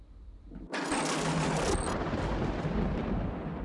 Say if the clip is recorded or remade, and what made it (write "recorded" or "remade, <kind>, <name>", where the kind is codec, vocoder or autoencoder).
recorded